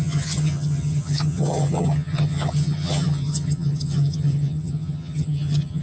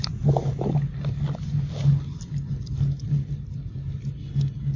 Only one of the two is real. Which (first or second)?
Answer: second